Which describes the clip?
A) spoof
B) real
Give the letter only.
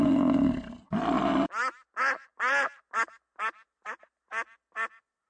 B